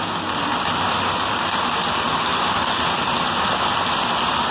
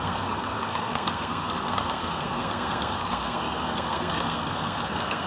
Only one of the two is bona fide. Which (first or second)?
first